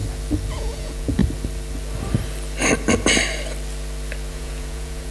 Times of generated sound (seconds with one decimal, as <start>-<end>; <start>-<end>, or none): 0.5-1.2; 4.3-5.1